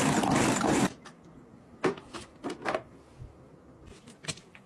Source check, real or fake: real